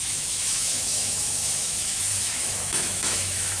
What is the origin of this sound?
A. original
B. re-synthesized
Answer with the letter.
B